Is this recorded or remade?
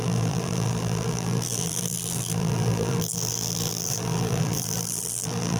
remade